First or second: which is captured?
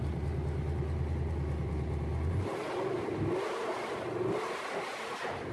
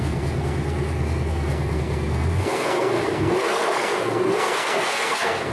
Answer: first